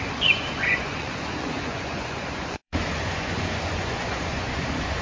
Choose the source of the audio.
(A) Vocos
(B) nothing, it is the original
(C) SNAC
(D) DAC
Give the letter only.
A